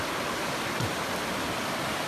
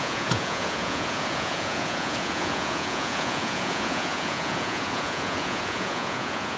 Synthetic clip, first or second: second